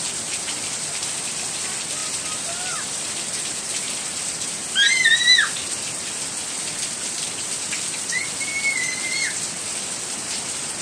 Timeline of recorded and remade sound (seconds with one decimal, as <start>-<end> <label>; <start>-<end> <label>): 0.0-2.0 recorded; 2.0-3.5 remade; 3.5-10.8 recorded